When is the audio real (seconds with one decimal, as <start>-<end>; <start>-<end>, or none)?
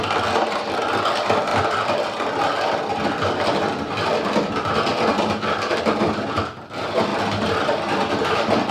1.5-5.8; 7.1-7.6